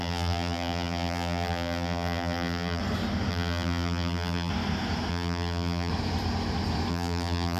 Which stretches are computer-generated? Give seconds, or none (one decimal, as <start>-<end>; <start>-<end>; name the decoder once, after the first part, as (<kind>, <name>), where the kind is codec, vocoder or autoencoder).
0.0-2.8 (vocoder, BigVGAN v2); 3.3-4.5; 5.1-5.9; 6.9-7.6